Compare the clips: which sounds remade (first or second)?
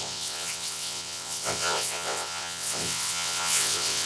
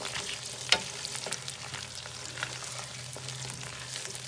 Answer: first